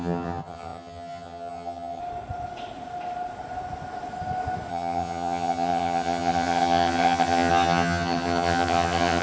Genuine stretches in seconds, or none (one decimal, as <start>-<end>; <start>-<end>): 2.0-4.7